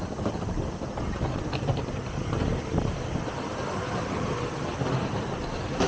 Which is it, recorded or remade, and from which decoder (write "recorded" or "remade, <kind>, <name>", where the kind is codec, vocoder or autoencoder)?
recorded